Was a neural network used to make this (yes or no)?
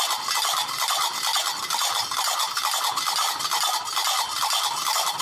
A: no